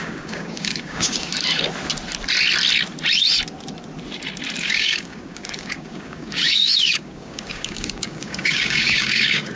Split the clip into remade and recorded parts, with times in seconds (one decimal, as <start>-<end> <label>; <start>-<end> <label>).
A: 0.0-1.3 remade; 1.3-4.6 recorded; 4.6-9.6 remade